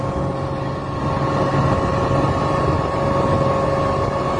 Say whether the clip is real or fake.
real